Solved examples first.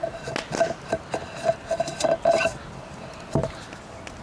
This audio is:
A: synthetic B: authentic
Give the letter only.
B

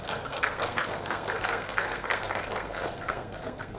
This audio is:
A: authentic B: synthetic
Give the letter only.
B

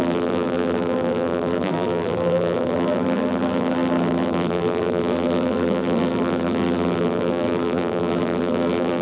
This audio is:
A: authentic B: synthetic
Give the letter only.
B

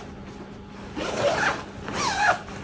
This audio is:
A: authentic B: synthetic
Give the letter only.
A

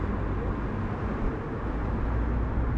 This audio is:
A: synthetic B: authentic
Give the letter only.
B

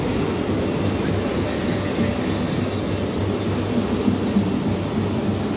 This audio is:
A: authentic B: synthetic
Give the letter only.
A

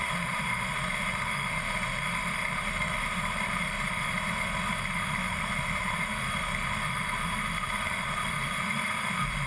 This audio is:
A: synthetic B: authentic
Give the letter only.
A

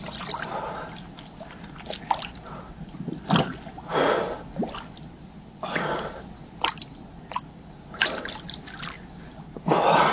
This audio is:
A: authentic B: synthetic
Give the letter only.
A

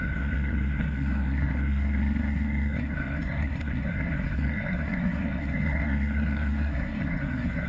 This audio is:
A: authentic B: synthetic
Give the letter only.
B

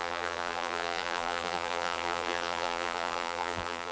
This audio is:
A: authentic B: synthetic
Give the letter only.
B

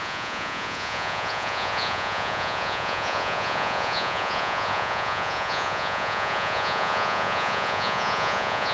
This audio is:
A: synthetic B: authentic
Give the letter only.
A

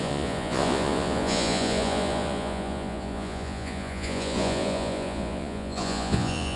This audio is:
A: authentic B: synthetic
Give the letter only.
B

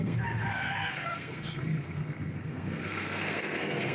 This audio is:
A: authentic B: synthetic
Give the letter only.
B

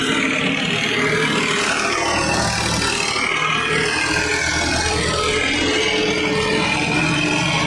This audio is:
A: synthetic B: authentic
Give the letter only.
B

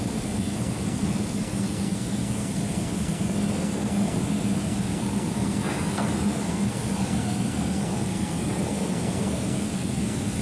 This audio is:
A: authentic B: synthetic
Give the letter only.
B